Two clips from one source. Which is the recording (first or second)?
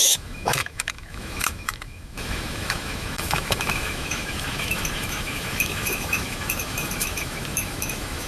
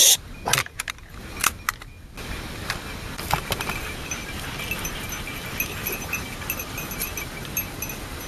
second